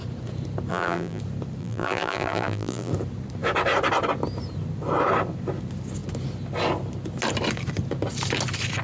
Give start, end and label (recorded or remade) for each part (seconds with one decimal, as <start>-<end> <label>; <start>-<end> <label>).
0.0-0.7 recorded; 0.7-1.2 remade; 1.2-1.6 recorded; 1.6-2.9 remade; 2.9-8.8 recorded